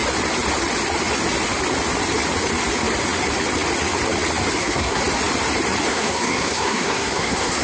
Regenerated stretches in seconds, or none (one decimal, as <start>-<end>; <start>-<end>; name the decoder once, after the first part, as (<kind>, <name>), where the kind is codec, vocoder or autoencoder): 4.6-5.0 (codec, SNAC); 5.9-7.6